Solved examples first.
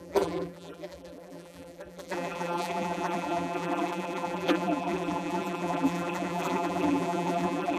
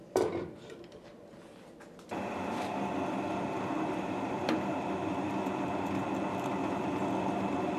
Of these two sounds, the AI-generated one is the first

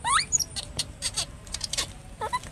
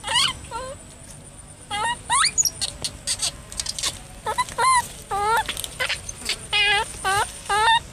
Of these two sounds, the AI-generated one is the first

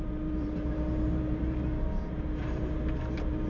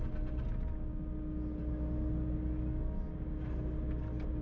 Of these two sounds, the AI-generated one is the first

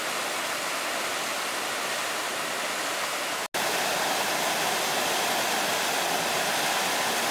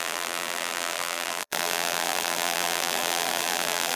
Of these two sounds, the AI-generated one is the second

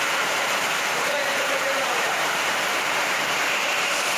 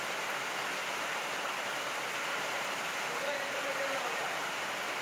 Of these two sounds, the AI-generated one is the first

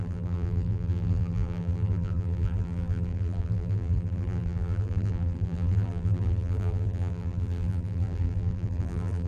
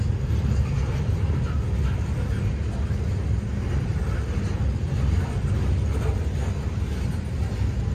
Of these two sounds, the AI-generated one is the first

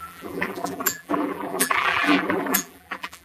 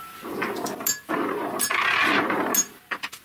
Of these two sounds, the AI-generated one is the first